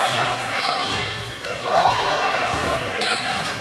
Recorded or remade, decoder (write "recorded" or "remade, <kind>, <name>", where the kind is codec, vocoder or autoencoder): remade, codec, SNAC